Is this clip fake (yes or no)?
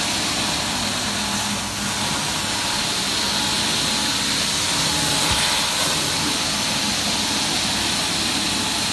no